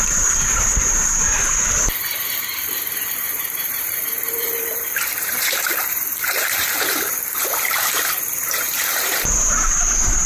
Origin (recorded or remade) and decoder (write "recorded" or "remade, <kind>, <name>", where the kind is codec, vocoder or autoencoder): remade, vocoder, BigVGAN v2